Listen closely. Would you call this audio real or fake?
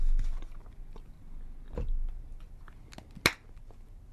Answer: real